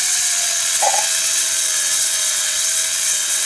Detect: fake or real fake